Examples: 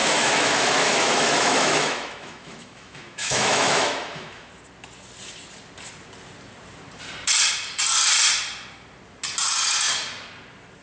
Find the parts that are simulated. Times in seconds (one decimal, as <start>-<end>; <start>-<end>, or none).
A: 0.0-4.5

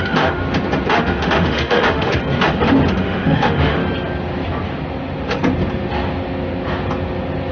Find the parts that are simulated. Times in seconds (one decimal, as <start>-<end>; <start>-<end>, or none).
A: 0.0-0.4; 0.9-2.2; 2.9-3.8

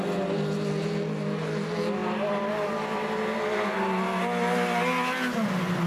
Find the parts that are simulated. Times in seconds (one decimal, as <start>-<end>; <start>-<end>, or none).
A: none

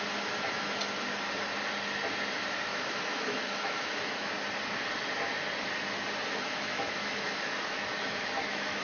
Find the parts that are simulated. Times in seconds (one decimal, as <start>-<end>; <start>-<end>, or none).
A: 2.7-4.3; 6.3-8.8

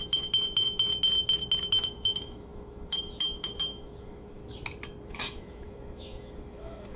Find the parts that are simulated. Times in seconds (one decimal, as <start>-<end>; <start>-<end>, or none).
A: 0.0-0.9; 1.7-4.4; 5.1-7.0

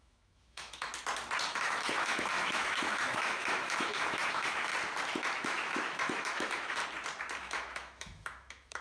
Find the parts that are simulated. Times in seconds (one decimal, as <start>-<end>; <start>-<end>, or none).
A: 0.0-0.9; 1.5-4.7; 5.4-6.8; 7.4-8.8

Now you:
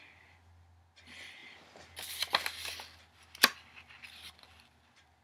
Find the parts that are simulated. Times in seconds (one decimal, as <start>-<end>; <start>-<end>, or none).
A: none